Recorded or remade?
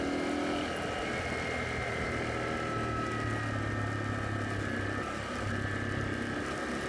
recorded